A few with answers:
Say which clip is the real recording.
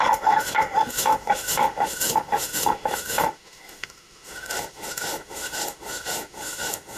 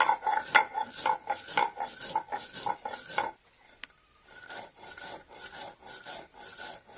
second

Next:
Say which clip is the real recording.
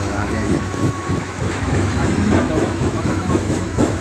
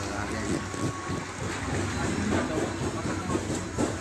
second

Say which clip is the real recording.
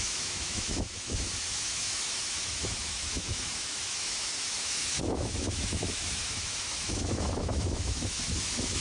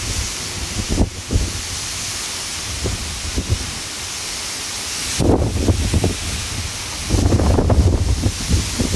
second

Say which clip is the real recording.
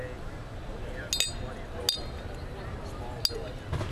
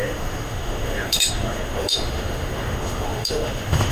first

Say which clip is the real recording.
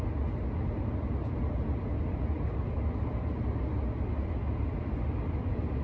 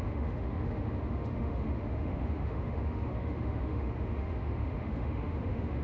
first